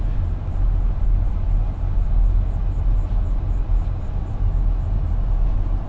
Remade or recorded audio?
recorded